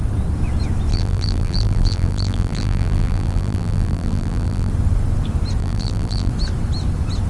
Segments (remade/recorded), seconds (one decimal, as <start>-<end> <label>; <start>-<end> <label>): 0.0-0.9 recorded; 0.9-4.7 remade; 4.7-5.6 recorded; 5.6-6.3 remade; 6.3-7.3 recorded